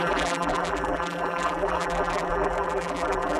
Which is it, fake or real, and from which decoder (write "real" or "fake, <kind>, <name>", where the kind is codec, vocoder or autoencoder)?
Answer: fake, vocoder, BigVGAN v2